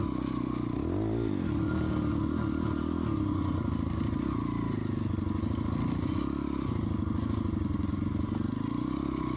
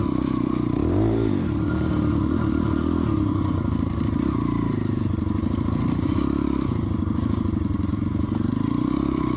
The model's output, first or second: second